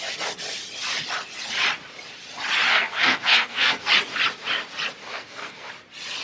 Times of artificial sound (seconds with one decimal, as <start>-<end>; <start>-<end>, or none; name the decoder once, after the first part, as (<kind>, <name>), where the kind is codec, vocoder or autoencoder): 2.7-3.9 (codec, SNAC); 5.0-5.7